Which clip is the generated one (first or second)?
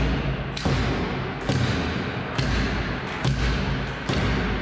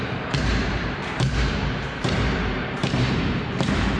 second